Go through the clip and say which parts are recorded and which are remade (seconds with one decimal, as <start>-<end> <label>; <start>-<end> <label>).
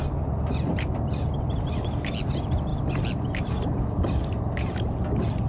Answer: 0.0-5.5 recorded